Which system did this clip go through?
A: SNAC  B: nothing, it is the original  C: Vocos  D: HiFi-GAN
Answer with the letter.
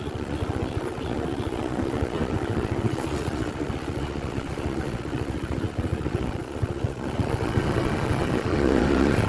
C